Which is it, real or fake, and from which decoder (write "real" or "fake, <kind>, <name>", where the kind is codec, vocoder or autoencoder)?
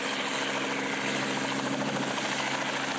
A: real